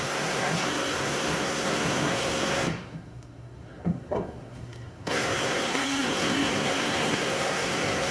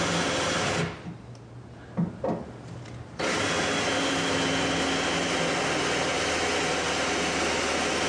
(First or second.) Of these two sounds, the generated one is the first